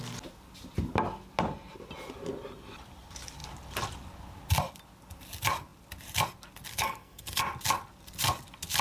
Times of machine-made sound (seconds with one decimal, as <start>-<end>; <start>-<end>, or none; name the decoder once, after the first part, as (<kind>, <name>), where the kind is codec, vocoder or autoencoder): 6.7-7.4 (codec, SNAC)